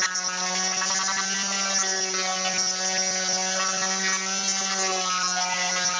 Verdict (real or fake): real